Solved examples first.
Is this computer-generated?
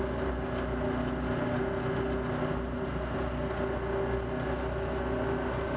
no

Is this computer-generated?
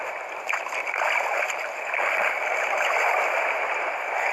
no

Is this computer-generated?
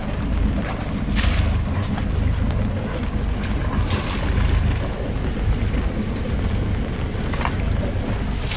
no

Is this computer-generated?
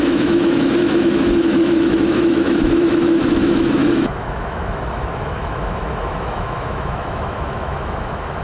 yes